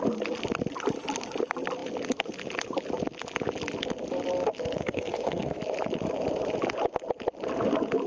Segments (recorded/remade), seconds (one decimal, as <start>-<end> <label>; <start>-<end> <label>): 0.0-4.8 recorded; 4.8-5.6 remade; 5.6-8.1 recorded